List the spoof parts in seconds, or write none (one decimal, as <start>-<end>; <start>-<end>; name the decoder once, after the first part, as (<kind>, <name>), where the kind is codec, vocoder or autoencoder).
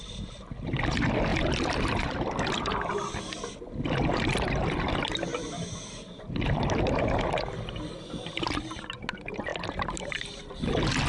none